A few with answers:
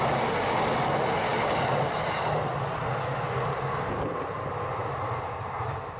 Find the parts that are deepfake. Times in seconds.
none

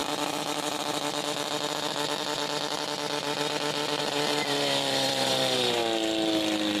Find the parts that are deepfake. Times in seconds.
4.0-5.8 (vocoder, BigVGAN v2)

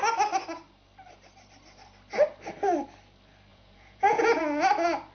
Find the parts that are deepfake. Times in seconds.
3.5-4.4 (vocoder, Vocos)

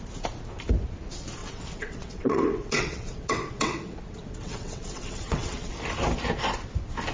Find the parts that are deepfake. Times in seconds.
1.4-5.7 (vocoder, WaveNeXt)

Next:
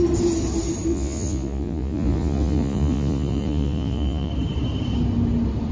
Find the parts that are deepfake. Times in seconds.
0.9-4.3 (vocoder, Vocos)

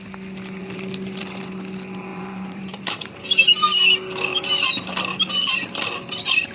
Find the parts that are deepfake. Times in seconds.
0.6-1.5 (vocoder, BigVGAN v2); 2.1-3.2; 4.3-4.9

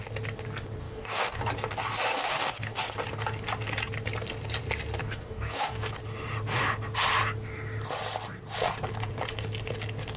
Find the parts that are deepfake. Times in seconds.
0.8-1.5 (codec, DAC); 2.1-2.8; 5.0-5.9